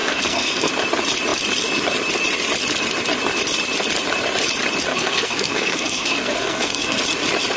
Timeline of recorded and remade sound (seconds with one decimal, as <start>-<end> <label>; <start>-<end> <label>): 0.0-0.7 remade; 0.7-4.9 recorded; 4.9-7.0 remade; 7.0-7.6 recorded